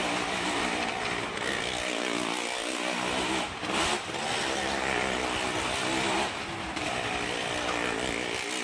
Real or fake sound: real